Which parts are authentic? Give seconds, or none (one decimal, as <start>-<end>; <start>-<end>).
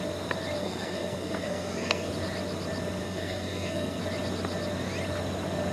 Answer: 0.0-0.6; 2.1-3.0; 4.0-5.7